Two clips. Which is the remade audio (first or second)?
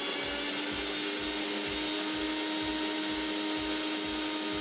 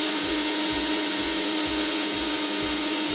second